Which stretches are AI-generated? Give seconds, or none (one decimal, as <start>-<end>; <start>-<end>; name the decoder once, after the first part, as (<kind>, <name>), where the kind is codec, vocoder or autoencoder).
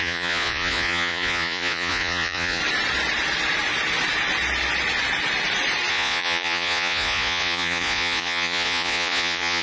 0.0-2.6 (vocoder, Vocos); 5.9-9.6